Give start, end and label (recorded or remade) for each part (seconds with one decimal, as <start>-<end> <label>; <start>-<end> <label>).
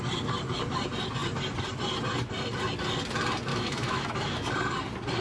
0.0-3.5 recorded; 3.5-4.5 remade; 4.5-5.2 recorded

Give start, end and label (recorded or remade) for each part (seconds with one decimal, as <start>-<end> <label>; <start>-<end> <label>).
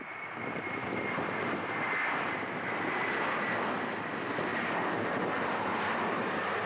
0.0-6.7 recorded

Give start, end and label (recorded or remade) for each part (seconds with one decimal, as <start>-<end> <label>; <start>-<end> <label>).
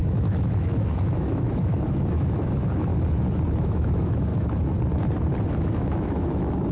0.0-2.9 remade; 2.9-3.6 recorded; 3.6-4.3 remade; 4.3-5.6 recorded; 5.6-6.7 remade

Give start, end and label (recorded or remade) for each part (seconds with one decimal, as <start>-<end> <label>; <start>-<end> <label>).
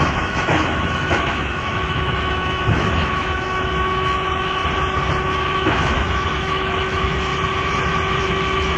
0.0-4.6 remade; 4.6-5.2 recorded; 5.2-7.3 remade; 7.3-8.2 recorded; 8.2-8.8 remade